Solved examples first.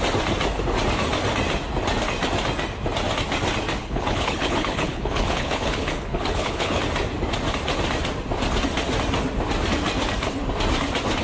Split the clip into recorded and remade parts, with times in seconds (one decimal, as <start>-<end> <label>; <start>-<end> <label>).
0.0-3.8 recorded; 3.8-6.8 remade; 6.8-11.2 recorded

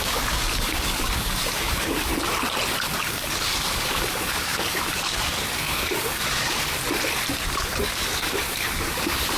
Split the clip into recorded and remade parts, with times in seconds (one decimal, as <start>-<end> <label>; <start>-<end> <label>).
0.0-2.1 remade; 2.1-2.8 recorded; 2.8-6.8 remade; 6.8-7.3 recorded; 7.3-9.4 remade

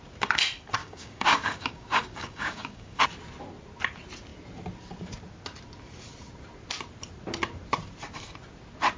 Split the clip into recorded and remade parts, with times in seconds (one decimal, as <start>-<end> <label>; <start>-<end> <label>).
0.0-0.8 recorded; 0.8-3.0 remade; 3.0-9.0 recorded

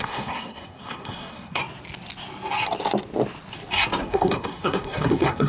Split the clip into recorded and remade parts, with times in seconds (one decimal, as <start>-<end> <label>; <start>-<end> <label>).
0.0-1.6 remade; 1.6-4.0 recorded; 4.0-5.5 remade